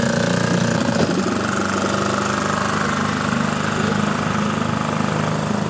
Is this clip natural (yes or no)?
yes